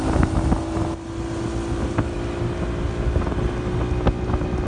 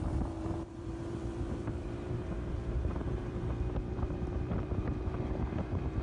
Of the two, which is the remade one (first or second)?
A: second